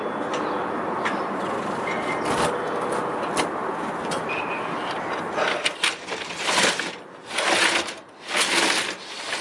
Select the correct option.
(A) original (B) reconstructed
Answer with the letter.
A